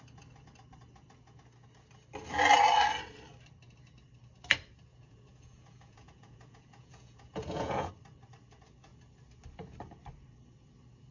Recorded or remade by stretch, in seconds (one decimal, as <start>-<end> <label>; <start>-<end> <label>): 0.0-4.9 recorded; 4.9-7.9 remade; 7.9-11.1 recorded